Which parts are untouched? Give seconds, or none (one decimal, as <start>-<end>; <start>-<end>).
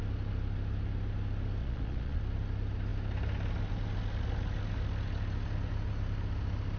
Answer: 0.0-1.6; 2.2-6.8